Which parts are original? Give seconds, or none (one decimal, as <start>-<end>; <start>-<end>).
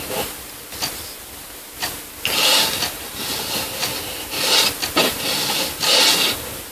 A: 0.0-6.7